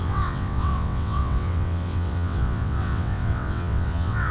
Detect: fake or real fake